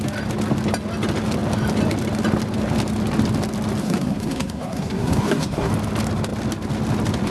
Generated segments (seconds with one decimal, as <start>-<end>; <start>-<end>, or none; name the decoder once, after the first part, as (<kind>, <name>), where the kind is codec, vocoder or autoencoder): 3.8-5.7 (codec, SNAC)